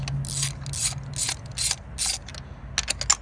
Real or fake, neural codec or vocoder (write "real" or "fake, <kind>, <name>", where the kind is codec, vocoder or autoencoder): real